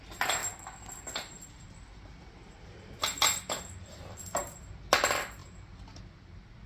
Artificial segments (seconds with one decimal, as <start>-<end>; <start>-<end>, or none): none